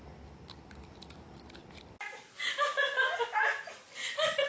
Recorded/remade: recorded